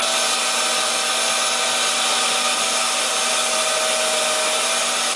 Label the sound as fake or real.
real